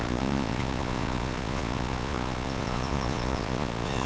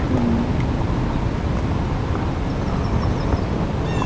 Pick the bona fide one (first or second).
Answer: second